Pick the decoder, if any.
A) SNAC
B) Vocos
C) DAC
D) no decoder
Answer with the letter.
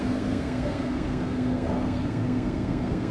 A